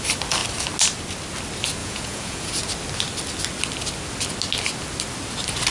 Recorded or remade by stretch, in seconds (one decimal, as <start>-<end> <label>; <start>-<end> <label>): 0.0-1.8 recorded; 1.8-2.5 remade; 2.5-5.7 recorded